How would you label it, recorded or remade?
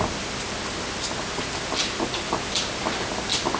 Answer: recorded